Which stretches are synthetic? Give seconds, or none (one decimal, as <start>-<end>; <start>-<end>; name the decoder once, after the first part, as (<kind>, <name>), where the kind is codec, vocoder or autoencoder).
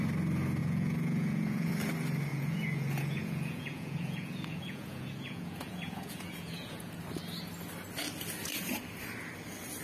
0.6-1.7 (vocoder, Vocos); 2.3-7.0